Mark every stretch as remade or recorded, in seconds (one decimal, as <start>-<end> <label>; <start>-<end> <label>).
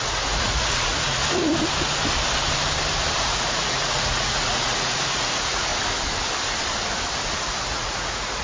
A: 0.0-1.2 remade; 1.2-3.2 recorded; 3.2-5.7 remade; 5.7-7.4 recorded; 7.4-8.4 remade